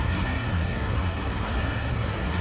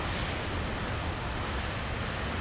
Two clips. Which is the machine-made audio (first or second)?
first